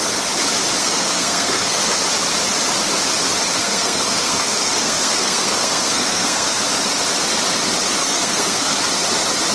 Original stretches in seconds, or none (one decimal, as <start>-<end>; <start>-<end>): 0.0-0.8; 2.0-3.6; 6.6-8.0; 8.8-9.5